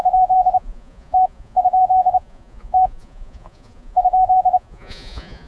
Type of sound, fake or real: fake